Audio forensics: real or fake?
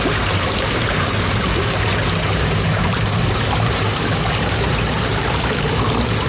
fake